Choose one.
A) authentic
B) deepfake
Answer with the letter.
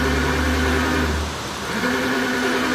A